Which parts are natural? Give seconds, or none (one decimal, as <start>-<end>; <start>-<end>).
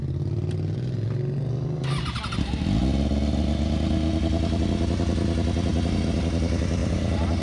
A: 0.0-6.8